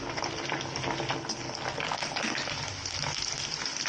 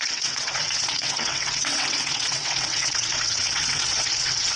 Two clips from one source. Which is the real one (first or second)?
first